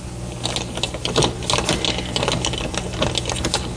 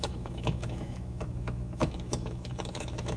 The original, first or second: first